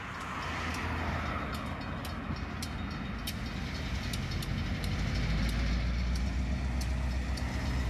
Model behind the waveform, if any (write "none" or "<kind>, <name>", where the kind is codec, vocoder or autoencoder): none